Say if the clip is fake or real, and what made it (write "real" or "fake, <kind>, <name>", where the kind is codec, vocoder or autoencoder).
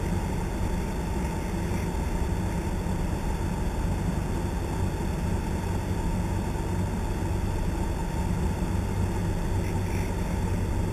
real